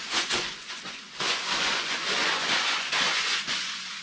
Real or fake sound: fake